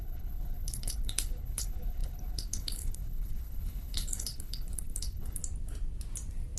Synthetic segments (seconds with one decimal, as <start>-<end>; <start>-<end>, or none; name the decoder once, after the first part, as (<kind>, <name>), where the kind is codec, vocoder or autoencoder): 0.0-5.4 (codec, HILCodec)